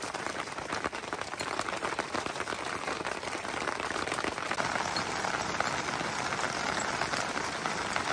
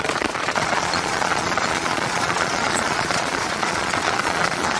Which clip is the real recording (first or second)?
first